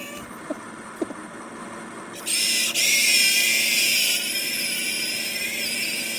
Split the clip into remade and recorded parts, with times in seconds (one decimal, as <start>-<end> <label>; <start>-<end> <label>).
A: 0.0-6.2 recorded